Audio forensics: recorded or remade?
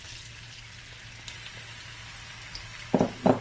recorded